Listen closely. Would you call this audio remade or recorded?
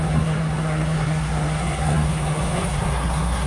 remade